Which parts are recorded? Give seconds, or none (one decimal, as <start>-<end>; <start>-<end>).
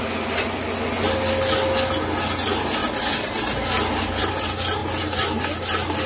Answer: 0.0-6.1